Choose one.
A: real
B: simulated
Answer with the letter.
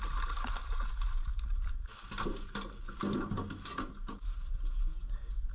A